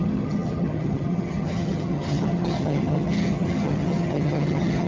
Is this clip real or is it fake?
fake